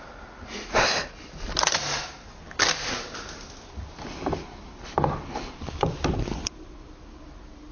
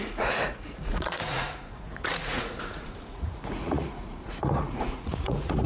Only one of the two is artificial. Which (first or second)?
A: second